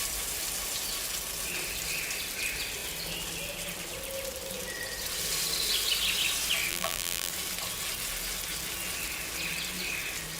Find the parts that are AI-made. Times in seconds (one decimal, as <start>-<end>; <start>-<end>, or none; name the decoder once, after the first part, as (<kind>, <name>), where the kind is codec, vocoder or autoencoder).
6.7-7.3 (vocoder, BigVGAN v2)